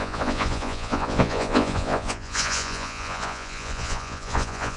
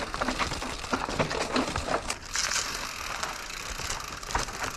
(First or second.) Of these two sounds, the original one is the second